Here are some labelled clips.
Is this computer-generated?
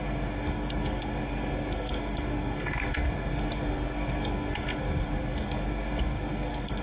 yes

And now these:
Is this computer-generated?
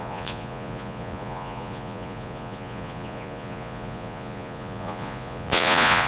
yes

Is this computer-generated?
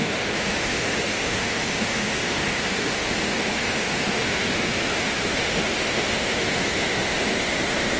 yes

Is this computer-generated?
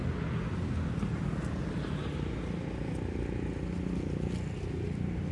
no